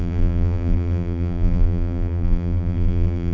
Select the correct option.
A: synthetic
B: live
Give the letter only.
A